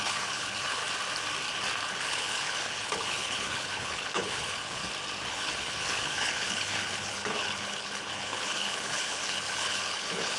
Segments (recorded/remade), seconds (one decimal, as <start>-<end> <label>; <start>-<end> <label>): 0.0-0.8 remade; 0.8-1.9 recorded; 1.9-4.8 remade; 4.8-5.3 recorded; 5.3-10.4 remade